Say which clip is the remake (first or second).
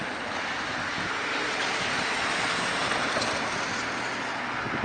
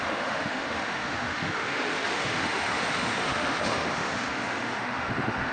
second